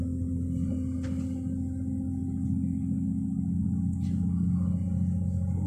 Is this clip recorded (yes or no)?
yes